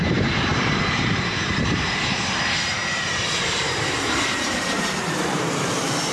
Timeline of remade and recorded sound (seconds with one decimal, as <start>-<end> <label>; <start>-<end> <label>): 0.0-6.1 remade